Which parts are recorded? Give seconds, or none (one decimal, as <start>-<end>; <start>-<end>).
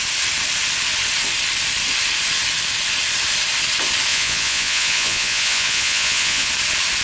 0.0-4.1; 6.5-7.0